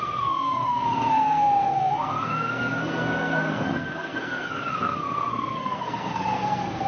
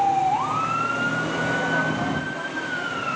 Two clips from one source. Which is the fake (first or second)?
first